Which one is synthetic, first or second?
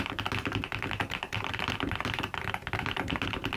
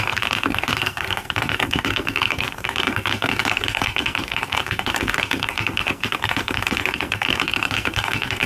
second